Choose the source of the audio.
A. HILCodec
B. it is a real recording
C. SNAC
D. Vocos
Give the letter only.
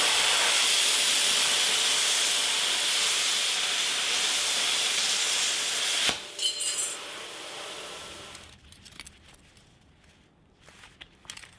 B